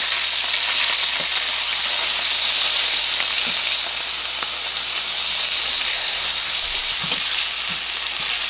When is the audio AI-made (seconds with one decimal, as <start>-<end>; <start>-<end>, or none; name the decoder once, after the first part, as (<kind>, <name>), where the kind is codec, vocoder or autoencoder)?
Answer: 5.9-6.5 (codec, SNAC)